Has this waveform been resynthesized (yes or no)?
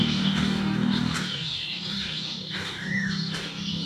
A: yes